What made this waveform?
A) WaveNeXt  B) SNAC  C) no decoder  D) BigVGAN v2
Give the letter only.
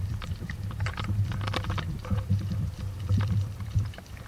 D